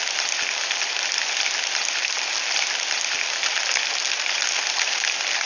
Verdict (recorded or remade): recorded